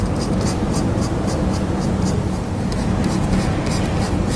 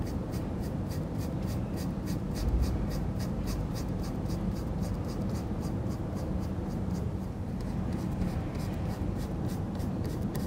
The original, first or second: first